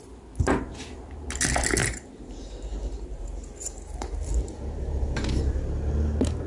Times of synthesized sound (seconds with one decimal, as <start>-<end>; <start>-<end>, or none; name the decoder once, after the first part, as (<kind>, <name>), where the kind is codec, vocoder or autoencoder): 1.8-5.4 (vocoder, BigVGAN v2)